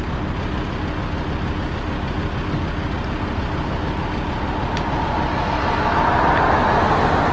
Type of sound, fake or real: real